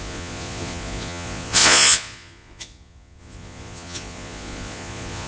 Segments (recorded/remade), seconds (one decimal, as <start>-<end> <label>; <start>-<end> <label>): 0.0-5.3 remade